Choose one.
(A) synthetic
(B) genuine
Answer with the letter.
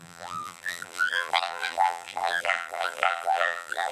A